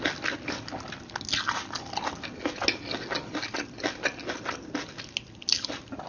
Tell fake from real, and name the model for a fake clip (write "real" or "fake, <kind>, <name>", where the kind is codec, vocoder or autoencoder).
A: real